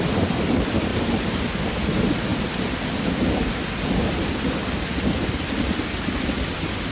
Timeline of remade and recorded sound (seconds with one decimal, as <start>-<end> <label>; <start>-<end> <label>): 0.0-0.9 remade; 0.9-1.4 recorded; 1.4-6.9 remade